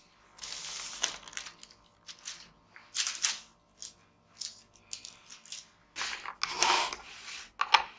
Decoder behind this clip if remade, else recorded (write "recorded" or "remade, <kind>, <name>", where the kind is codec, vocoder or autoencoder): recorded